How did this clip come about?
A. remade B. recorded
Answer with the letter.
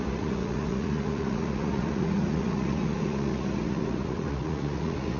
A